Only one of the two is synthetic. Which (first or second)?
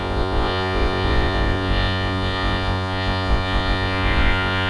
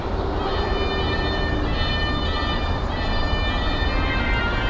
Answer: first